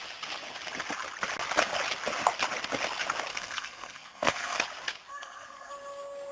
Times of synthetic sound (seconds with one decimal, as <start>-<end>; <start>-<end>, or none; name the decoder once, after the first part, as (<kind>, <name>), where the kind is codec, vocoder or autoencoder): 3.3-4.6 (codec, SNAC); 5.1-5.7

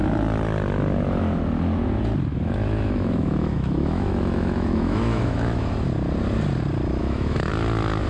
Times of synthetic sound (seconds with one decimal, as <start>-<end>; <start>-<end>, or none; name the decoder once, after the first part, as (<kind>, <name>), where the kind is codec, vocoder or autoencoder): 2.3-5.7 (autoencoder, DAC-VAE); 7.0-7.5

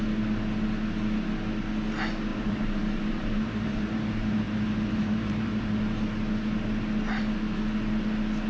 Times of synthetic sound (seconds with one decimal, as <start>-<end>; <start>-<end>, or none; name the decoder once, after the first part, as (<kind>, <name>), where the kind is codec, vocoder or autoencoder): 2.3-5.8 (vocoder, BigVGAN v2)